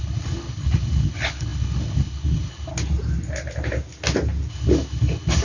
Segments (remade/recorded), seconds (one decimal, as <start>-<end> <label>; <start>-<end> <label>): 0.0-2.7 remade; 2.7-4.5 recorded; 4.5-5.4 remade

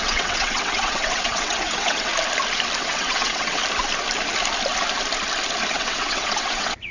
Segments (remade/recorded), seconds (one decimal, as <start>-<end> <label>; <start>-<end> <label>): 0.0-2.1 remade; 2.1-2.8 recorded; 2.8-3.6 remade; 3.6-5.7 recorded; 5.7-6.9 remade